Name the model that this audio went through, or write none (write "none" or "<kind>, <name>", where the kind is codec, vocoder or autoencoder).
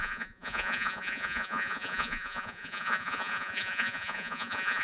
vocoder, Vocos